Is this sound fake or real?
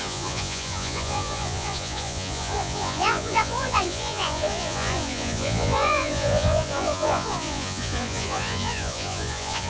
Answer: fake